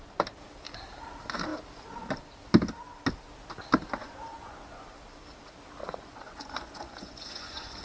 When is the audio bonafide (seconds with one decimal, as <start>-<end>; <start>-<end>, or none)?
0.0-4.0; 4.8-5.8